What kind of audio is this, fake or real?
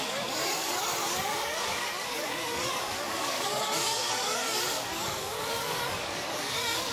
fake